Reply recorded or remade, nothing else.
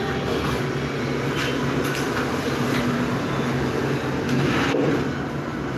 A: recorded